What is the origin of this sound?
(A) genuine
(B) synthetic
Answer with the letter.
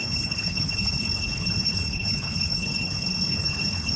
B